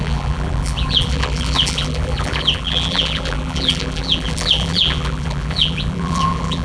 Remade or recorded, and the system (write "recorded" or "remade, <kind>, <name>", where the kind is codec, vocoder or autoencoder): remade, vocoder, BigVGAN v2